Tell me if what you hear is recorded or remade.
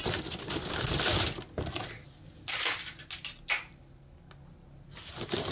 recorded